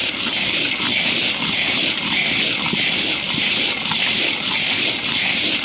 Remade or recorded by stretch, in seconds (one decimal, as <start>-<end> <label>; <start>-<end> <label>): 0.0-5.6 recorded